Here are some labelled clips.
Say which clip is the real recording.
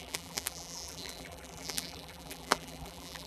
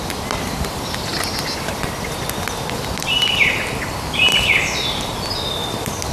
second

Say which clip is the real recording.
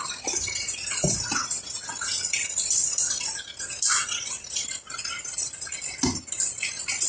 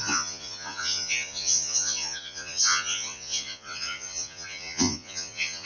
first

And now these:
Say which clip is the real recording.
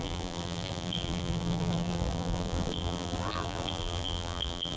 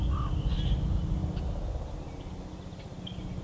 second